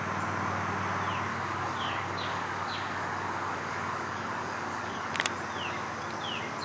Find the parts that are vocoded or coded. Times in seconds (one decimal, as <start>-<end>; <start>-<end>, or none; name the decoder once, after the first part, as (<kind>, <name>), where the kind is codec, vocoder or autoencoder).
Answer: 1.3-5.1 (codec, DAC)